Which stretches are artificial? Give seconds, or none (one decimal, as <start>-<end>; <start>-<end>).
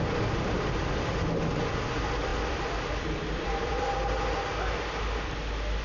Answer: 2.3-3.8